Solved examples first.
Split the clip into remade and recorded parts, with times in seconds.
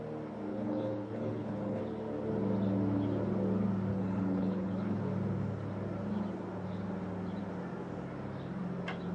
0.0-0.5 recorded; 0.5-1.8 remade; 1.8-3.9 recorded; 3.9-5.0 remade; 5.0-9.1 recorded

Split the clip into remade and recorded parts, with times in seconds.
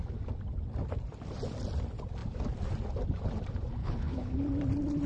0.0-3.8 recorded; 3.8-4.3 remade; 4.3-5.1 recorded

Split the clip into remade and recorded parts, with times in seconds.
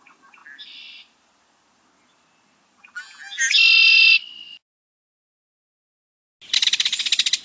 0.0-7.4 recorded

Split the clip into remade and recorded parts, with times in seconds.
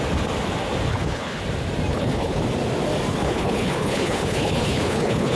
0.0-0.9 recorded; 0.9-1.4 remade; 1.4-1.9 recorded; 1.9-2.4 remade; 2.4-3.1 recorded; 3.1-5.4 remade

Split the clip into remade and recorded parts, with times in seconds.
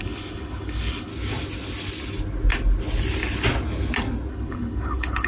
0.0-1.1 remade; 1.1-4.3 recorded; 4.3-5.3 remade